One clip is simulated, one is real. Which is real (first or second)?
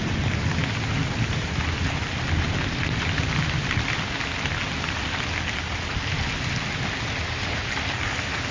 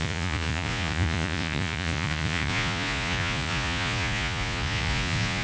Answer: first